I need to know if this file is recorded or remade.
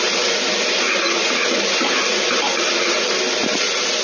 recorded